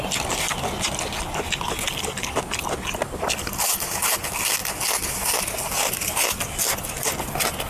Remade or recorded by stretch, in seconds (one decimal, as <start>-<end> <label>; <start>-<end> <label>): 0.0-7.7 recorded